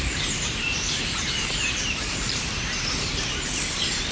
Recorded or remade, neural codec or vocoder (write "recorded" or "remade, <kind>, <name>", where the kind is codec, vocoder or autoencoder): remade, vocoder, BigVGAN v2